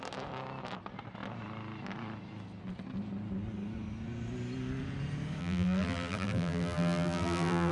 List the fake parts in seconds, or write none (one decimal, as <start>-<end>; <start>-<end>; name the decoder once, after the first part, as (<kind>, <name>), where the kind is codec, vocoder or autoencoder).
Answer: 5.4-7.7 (vocoder, BigVGAN v2)